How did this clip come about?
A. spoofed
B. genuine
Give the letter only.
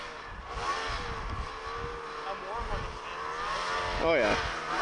B